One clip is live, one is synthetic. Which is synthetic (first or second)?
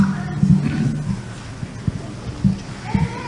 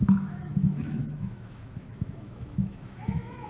second